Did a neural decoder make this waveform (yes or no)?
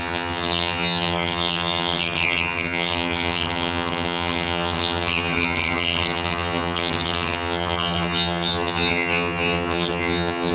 yes